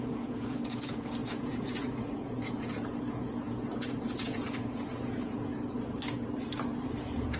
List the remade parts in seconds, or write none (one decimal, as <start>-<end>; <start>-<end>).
0.0-5.5; 7.0-7.4